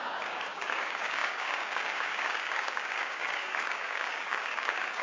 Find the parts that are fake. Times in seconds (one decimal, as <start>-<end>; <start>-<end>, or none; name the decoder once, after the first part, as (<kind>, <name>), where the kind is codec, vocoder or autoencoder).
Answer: 0.0-5.0 (codec, DAC)